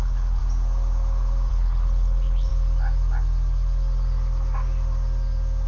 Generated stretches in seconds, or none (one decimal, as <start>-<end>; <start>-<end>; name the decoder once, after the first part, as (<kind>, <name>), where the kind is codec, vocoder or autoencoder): 0.0-0.4 (codec, HILCodec); 1.5-2.5